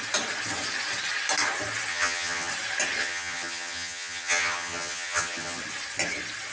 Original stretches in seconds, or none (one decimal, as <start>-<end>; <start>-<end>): 0.0-1.9; 2.5-3.0; 5.6-6.5